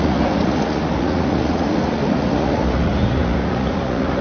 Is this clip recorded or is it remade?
remade